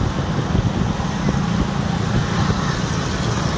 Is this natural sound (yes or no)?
yes